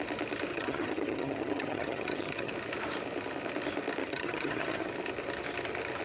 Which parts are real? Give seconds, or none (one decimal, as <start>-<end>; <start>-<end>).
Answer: 0.0-0.5; 2.5-4.0; 4.9-6.0